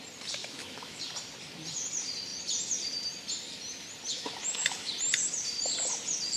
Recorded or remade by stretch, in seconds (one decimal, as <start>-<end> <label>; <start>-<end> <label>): 0.0-0.4 recorded; 0.4-1.0 remade; 1.0-4.1 recorded; 4.1-4.9 remade; 4.9-6.4 recorded